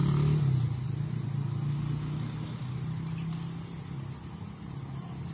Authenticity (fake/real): real